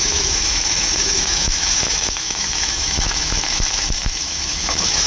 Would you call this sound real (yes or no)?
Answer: no